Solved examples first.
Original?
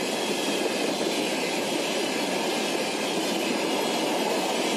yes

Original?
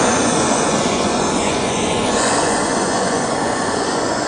no